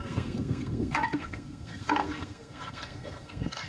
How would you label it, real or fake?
fake